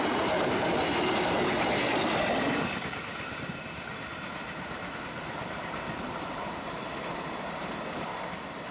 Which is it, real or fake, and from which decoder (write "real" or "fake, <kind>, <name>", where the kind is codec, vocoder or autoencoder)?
real